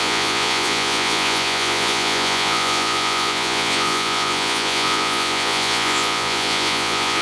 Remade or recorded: remade